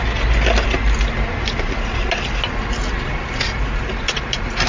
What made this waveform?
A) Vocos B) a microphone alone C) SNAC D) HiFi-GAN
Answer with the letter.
B